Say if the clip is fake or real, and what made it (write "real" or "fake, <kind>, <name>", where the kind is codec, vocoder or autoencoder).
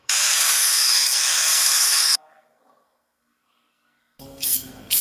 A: fake, codec, SNAC